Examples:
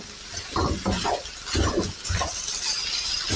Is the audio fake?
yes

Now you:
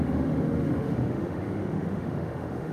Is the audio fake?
yes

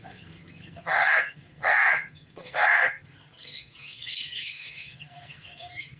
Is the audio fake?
yes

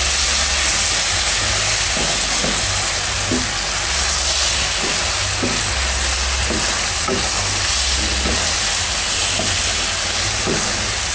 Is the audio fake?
no